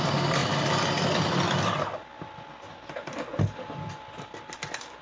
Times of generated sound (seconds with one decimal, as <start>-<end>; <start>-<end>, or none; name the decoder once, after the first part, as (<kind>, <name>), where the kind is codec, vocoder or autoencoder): none